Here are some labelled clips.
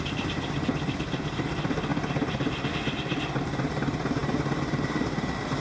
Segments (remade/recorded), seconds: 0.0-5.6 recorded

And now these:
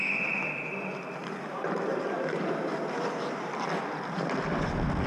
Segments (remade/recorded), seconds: 0.0-1.9 recorded; 1.9-3.7 remade; 3.7-5.1 recorded

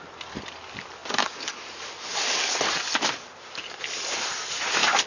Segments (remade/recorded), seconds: 0.0-5.1 recorded

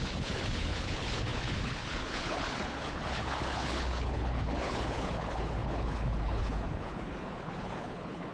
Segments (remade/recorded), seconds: 0.0-8.3 remade

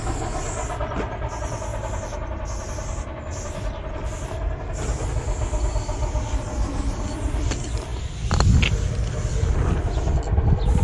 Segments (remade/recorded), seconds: 0.0-10.8 recorded